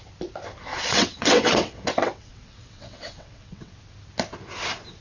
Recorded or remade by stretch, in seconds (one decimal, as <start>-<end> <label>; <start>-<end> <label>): 0.0-0.7 recorded; 0.7-3.7 remade; 3.7-5.0 recorded